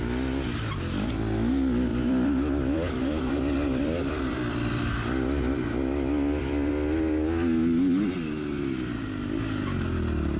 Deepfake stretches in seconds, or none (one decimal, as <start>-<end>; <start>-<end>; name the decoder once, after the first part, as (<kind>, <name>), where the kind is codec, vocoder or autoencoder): 1.9-6.7 (vocoder, BigVGAN v2)